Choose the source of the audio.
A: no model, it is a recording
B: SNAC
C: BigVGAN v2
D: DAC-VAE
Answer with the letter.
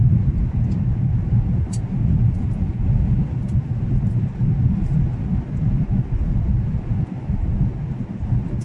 A